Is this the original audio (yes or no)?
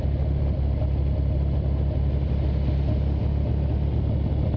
yes